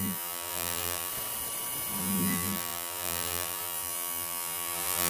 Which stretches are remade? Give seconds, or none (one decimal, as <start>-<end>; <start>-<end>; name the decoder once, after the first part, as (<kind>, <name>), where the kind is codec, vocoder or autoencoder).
0.0-1.1 (vocoder, BigVGAN v2); 2.0-5.1